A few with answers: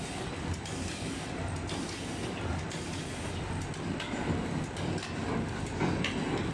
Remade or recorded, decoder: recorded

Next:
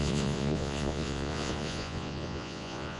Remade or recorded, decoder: remade, vocoder, Vocos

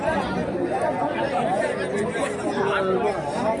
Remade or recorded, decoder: recorded